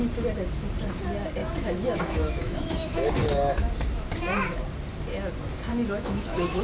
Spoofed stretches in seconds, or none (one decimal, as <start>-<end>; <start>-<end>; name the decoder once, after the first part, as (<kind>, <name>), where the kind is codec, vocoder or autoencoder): 1.4-3.1 (autoencoder, DAC-VAE); 5.7-6.6